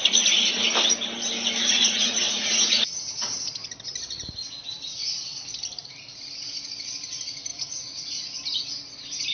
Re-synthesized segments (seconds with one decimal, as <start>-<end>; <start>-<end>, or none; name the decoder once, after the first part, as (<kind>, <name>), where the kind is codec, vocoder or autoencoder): 1.6-3.3 (vocoder, Vocos); 7.5-8.0